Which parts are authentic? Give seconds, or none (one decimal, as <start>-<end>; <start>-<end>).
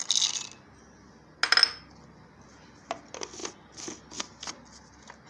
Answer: 0.0-5.3